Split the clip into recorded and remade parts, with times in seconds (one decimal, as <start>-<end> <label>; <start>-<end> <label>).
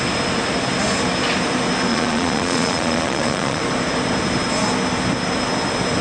0.0-1.9 recorded; 1.9-3.6 remade; 3.6-6.0 recorded